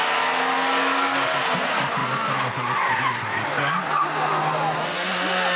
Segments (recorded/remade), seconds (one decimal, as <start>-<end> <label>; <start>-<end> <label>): 0.0-1.6 recorded; 1.6-2.0 remade; 2.0-5.6 recorded